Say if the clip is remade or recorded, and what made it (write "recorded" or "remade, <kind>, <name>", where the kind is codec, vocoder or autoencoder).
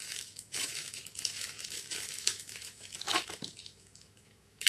remade, autoencoder, DAC-VAE